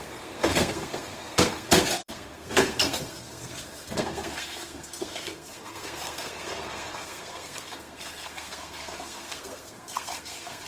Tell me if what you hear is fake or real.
fake